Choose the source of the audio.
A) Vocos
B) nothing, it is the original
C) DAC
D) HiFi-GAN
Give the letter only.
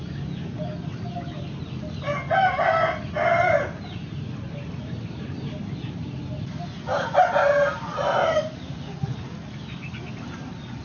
B